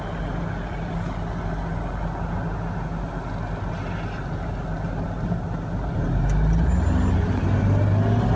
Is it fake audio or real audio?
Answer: real